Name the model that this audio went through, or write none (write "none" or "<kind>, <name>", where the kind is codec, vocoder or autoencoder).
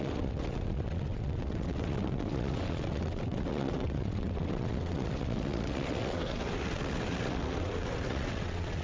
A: vocoder, WaveNeXt